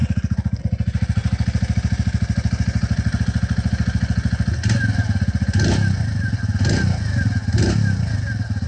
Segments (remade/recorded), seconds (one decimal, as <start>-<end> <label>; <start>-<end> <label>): 0.0-8.7 recorded